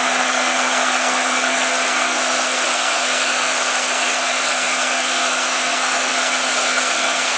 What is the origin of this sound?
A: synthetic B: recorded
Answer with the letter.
A